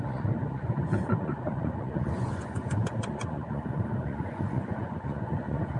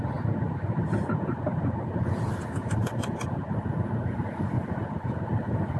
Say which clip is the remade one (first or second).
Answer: first